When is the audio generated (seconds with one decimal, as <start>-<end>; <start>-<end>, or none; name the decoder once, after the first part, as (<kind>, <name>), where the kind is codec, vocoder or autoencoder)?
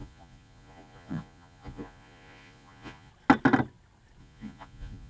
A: 0.0-3.1 (vocoder, Vocos); 4.2-5.1